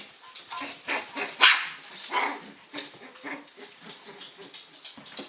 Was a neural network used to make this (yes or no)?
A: no